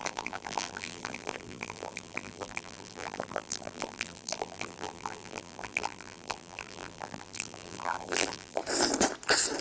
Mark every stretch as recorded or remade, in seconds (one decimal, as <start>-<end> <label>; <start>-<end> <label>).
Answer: 0.0-8.6 remade; 8.6-9.6 recorded